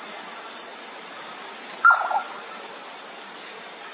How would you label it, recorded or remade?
recorded